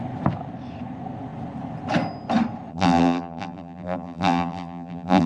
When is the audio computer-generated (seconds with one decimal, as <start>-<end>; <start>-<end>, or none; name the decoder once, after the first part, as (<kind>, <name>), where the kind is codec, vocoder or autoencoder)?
2.7-5.3 (vocoder, BigVGAN v2)